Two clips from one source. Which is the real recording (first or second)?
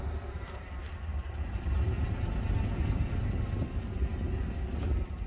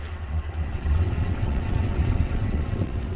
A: first